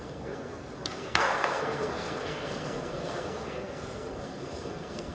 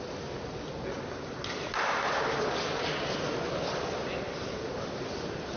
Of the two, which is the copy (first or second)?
first